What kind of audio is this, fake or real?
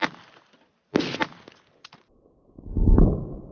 real